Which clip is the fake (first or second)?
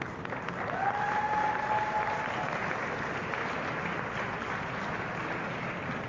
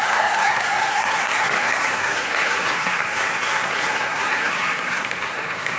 second